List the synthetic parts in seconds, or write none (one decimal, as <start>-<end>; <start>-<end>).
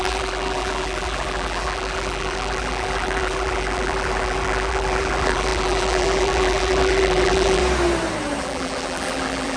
0.0-7.6; 8.4-9.6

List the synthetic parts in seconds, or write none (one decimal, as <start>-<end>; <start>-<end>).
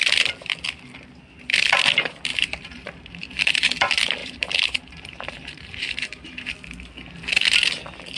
2.3-3.5; 4.2-6.5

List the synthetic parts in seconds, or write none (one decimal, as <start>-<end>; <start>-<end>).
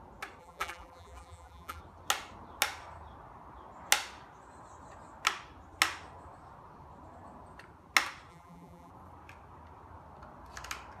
0.4-1.8; 8.3-8.9